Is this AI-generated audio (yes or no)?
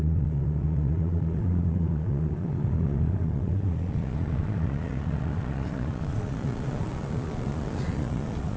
yes